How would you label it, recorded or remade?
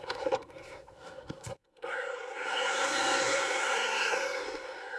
remade